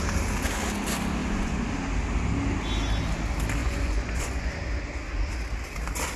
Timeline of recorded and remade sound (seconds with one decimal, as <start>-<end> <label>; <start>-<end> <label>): 0.0-1.2 recorded; 1.2-1.7 remade; 1.7-3.6 recorded; 3.6-4.5 remade; 4.5-6.2 recorded